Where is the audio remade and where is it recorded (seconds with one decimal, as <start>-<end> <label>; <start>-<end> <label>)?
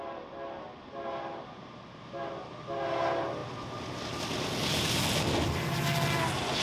0.0-6.6 recorded